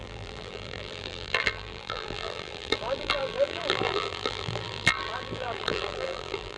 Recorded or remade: remade